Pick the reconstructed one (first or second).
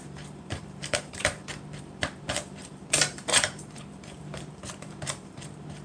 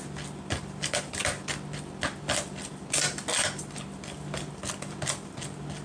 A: first